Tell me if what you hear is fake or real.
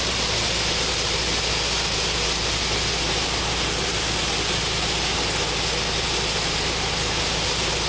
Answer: real